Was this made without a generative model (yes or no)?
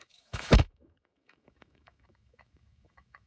no